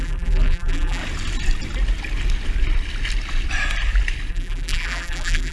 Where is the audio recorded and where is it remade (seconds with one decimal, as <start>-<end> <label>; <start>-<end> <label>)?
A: 0.0-1.0 remade; 1.0-4.3 recorded; 4.3-5.5 remade